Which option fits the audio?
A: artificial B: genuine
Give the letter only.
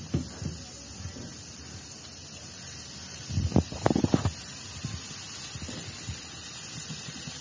B